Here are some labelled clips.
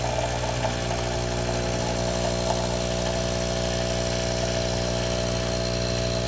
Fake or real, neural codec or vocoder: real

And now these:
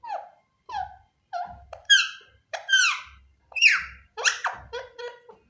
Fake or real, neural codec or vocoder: fake, vocoder, BigVGAN v2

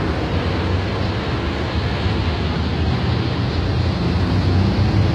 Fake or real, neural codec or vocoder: real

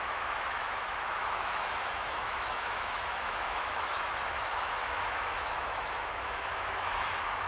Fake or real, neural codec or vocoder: fake, autoencoder, DAC-VAE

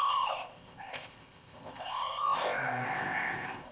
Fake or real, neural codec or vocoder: fake, codec, ZipCodec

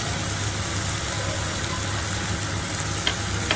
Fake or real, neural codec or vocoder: real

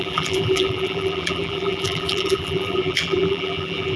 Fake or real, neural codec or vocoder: fake, vocoder, BigVGAN v2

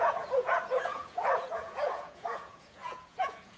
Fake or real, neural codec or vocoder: fake, vocoder, Vocos